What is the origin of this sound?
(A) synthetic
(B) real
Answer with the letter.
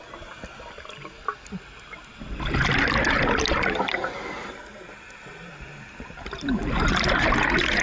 B